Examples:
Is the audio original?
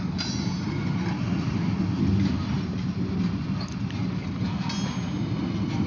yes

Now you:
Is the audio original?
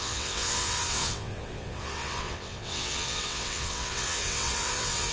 no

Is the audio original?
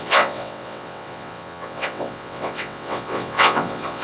no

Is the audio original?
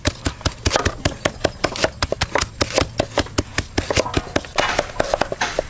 yes